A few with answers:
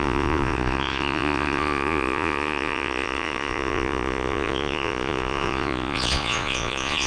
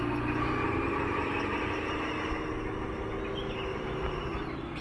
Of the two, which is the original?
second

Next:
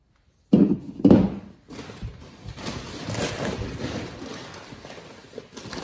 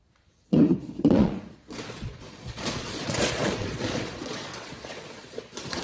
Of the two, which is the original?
first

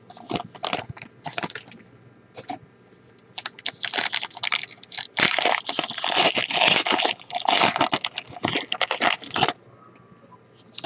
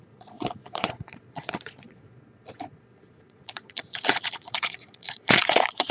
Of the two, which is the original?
first